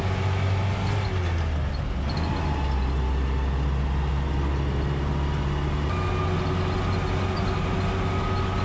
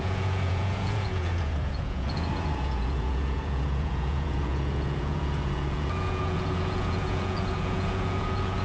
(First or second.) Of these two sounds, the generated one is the second